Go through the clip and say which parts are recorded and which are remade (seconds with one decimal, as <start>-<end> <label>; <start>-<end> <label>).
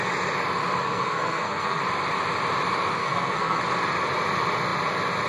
0.0-0.8 recorded; 0.8-1.8 remade; 1.8-3.0 recorded; 3.0-3.6 remade; 3.6-5.3 recorded